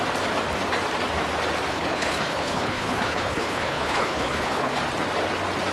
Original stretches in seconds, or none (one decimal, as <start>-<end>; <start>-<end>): 0.0-1.7; 4.7-5.7